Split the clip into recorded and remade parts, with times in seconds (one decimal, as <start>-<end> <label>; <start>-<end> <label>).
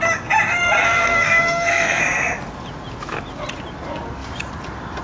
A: 0.0-0.8 recorded; 0.8-2.0 remade; 2.0-5.0 recorded